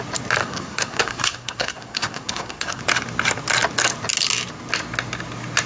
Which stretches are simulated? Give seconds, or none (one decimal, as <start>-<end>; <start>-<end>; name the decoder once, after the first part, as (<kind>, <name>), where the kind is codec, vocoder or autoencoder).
0.4-2.8 (codec, SNAC)

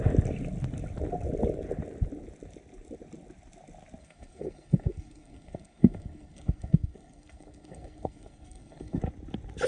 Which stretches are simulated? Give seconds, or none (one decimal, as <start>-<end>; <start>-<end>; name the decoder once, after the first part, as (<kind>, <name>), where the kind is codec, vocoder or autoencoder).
4.0-9.0 (codec, SNAC)

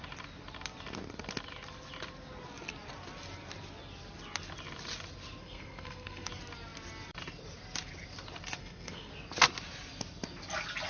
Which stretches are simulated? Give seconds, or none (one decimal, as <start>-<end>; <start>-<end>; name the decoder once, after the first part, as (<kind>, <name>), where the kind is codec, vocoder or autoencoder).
5.4-6.3 (codec, SNAC); 8.6-9.1

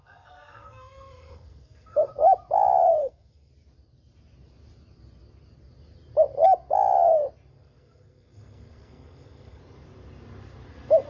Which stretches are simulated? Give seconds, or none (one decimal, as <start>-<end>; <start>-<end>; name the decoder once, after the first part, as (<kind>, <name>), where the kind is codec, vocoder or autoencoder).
0.0-2.1 (codec, SNAC); 3.0-3.5; 7.5-9.6

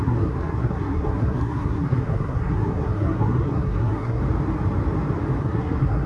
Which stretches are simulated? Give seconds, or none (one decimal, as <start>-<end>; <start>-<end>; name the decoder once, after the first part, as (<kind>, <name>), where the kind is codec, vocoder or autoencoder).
0.0-4.2 (codec, SNAC); 5.4-6.1